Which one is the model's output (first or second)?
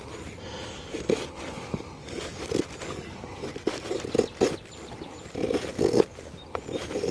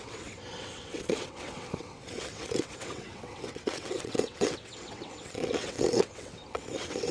second